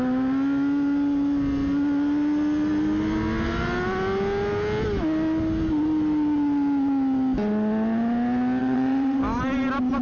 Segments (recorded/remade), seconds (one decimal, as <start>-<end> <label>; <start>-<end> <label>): 0.0-8.6 recorded; 8.6-9.2 remade; 9.2-10.0 recorded